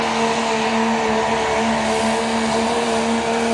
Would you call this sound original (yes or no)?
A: yes